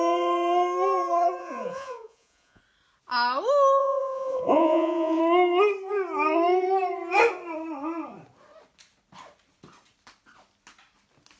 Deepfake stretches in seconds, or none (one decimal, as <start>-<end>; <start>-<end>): 1.4-2.6; 3.8-5.2